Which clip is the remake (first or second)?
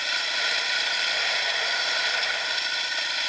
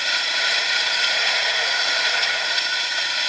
second